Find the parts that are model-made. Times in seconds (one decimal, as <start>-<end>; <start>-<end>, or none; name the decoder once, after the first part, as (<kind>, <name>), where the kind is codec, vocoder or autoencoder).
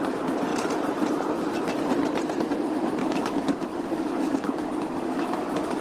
3.0-5.8 (codec, DAC)